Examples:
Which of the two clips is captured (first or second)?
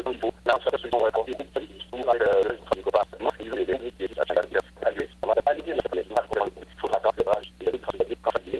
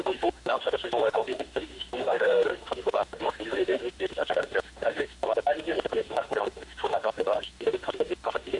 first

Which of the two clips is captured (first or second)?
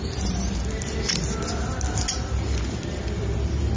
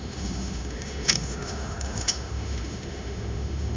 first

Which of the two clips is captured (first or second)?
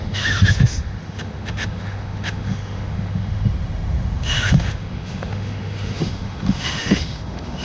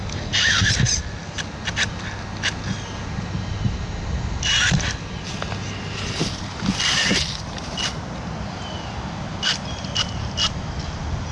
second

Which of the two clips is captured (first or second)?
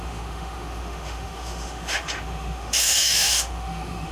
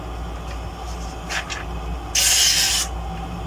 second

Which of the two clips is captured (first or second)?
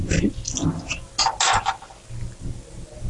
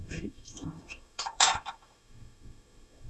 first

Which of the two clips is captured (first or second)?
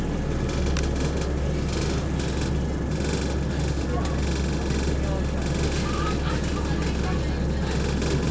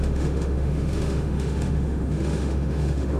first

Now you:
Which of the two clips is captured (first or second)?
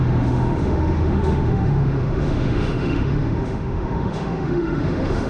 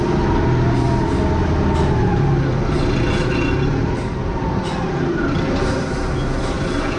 second